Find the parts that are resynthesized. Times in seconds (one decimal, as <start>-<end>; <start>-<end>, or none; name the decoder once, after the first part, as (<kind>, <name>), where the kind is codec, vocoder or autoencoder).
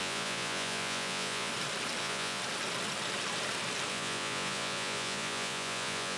0.0-1.5 (vocoder, Vocos); 2.0-2.4; 3.9-6.2